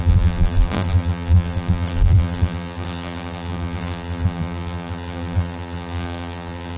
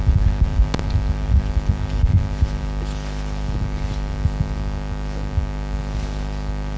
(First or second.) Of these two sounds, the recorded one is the second